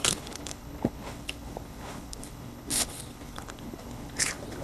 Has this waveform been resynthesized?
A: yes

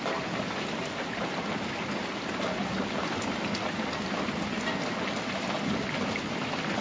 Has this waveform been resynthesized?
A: no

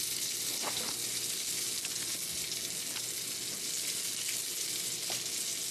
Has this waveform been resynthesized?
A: no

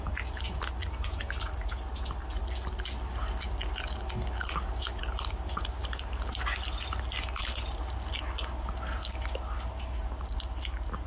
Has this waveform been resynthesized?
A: no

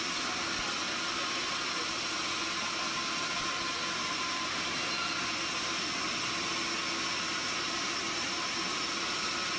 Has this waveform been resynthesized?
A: no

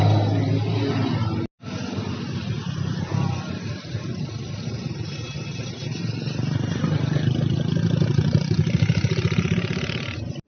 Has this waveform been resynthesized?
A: no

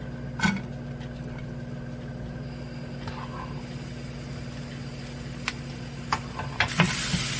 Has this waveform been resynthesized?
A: no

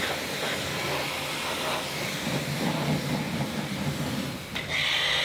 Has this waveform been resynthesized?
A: no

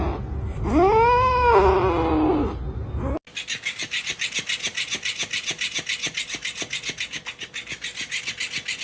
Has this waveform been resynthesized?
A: no